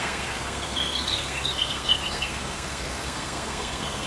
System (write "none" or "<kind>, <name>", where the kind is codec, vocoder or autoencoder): codec, SNAC